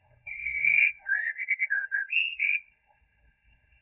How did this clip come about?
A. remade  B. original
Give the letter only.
A